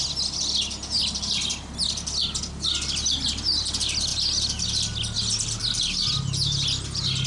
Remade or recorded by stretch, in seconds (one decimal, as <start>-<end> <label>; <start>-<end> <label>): 0.0-7.3 recorded